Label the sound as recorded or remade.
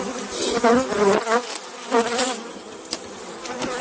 recorded